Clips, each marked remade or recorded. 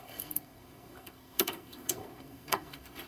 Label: remade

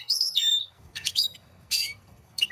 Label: remade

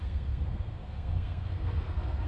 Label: remade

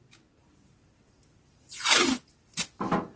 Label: recorded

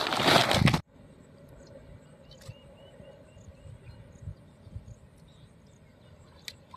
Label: recorded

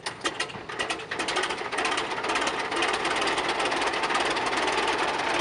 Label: recorded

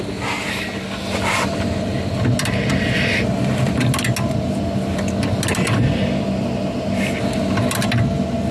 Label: recorded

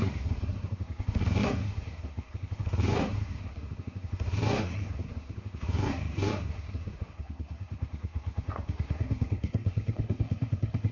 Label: remade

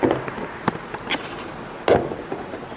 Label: recorded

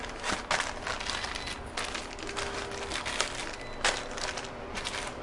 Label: recorded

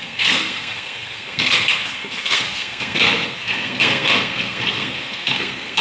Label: remade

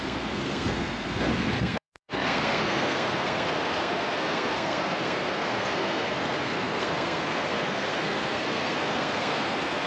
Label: remade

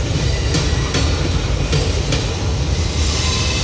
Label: recorded